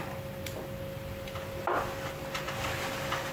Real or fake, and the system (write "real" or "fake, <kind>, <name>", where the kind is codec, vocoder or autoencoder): real